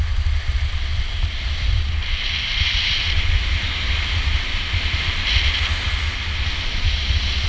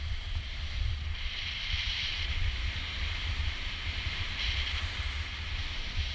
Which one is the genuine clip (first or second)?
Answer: first